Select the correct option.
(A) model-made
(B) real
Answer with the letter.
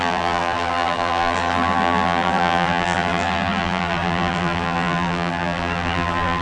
A